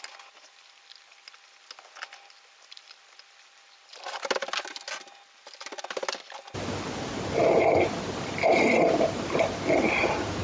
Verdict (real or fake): real